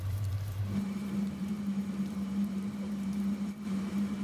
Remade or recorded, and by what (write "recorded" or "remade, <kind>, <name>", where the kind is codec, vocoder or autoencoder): remade, vocoder, BigVGAN v2